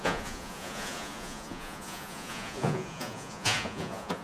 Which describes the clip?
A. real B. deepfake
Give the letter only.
B